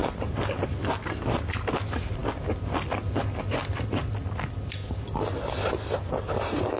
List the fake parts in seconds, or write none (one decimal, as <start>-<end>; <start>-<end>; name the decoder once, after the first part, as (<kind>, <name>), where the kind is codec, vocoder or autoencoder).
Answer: none